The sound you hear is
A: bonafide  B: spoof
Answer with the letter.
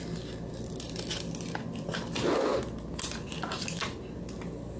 A